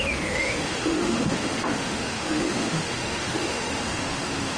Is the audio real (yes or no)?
no